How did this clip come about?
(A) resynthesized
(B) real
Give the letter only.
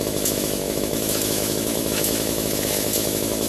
A